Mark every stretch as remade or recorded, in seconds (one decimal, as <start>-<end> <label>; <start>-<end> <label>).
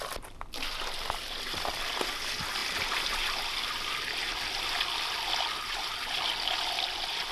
0.0-2.6 recorded; 2.6-4.2 remade; 4.2-7.3 recorded